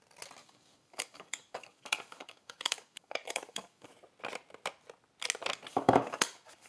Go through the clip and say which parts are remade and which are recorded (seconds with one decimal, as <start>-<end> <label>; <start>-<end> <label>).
0.0-0.4 recorded; 0.4-3.9 remade; 3.9-5.7 recorded; 5.7-6.7 remade